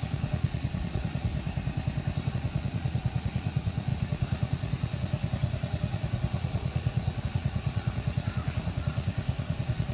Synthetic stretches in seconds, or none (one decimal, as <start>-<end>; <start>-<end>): 0.0-1.3; 2.3-9.9